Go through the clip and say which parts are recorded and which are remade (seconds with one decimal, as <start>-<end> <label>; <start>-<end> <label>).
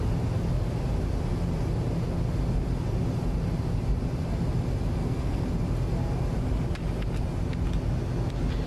0.0-5.0 recorded; 5.0-5.5 remade; 5.5-8.7 recorded